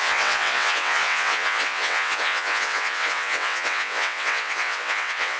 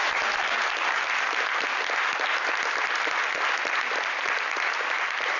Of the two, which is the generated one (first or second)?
first